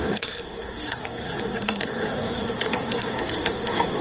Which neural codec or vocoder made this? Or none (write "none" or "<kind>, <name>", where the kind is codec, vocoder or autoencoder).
codec, SNAC